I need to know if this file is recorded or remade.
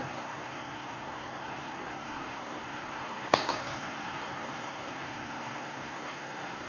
remade